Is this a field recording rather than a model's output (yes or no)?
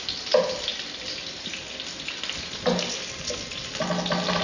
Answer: yes